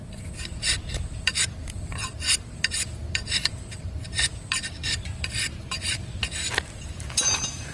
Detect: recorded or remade remade